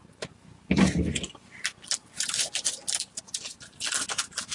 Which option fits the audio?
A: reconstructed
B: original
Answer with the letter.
B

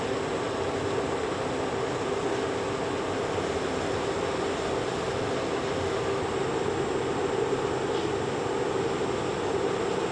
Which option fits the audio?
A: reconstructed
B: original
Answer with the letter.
B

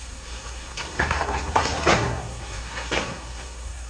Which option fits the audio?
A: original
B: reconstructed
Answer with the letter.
B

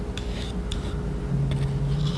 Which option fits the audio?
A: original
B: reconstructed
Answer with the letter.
A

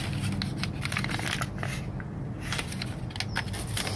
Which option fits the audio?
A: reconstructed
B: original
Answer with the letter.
B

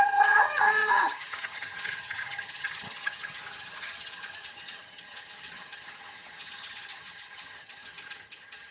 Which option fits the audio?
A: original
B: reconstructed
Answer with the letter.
B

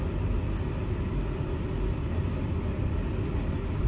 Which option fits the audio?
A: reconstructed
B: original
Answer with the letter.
B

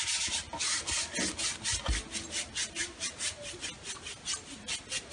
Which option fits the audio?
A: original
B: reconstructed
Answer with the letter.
A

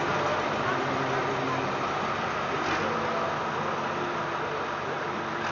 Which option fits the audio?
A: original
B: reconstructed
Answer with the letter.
A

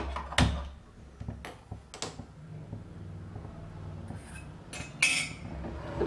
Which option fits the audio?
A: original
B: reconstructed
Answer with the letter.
A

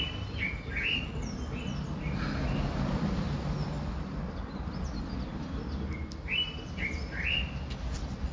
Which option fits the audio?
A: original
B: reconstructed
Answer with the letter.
A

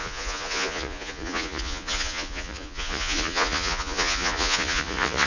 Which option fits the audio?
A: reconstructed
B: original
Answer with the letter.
A